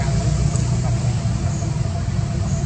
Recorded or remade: recorded